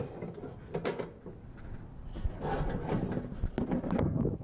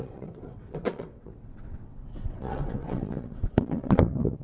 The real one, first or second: first